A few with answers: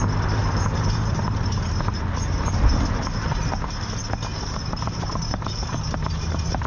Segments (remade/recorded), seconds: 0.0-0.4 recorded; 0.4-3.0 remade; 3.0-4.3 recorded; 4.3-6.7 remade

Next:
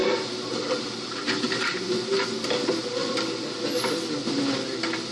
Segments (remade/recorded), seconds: 0.0-1.7 remade; 1.7-5.1 recorded

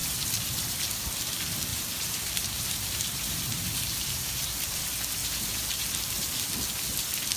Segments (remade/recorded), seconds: 0.0-1.2 remade; 1.2-1.7 recorded; 1.7-4.8 remade; 4.8-5.2 recorded; 5.2-5.9 remade; 5.9-7.4 recorded

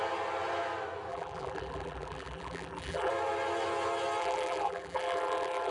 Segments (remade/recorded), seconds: 0.0-1.1 recorded; 1.1-3.1 remade; 3.1-4.2 recorded; 4.2-5.7 remade

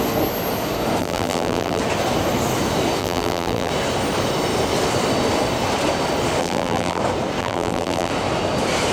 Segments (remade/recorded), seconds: 0.0-1.0 recorded; 1.0-1.8 remade; 1.8-3.0 recorded; 3.0-3.7 remade; 3.7-6.4 recorded; 6.4-7.0 remade; 7.0-7.4 recorded; 7.4-8.1 remade; 8.1-8.9 recorded

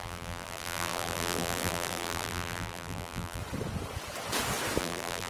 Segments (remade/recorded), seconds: 0.0-3.4 remade; 3.4-4.8 recorded; 4.8-5.3 remade

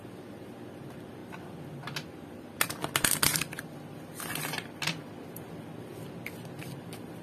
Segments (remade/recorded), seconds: 0.0-5.9 remade; 5.9-6.6 recorded; 6.6-7.2 remade

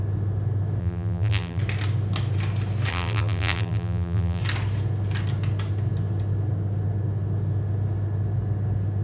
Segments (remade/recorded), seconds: 0.0-0.8 recorded; 0.8-1.6 remade; 1.6-2.9 recorded; 2.9-4.4 remade; 4.4-9.0 recorded